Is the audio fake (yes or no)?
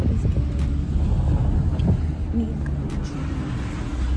no